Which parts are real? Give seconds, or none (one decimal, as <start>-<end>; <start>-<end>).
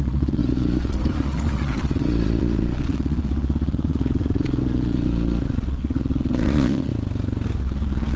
6.9-7.6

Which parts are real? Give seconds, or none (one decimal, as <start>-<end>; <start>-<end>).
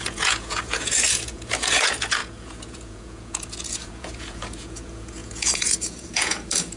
none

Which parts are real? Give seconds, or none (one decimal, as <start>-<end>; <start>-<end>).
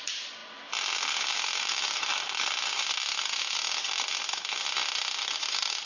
0.0-5.9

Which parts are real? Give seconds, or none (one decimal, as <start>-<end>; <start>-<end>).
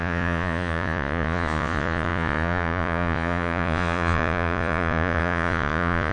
none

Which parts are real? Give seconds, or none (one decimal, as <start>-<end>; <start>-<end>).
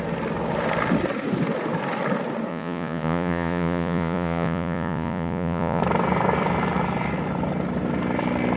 0.0-2.5; 5.8-8.6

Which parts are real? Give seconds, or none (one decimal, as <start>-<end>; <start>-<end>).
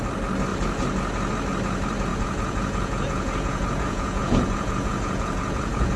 0.0-2.1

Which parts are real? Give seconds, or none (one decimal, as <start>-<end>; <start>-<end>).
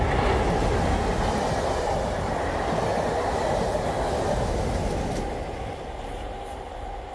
0.0-7.1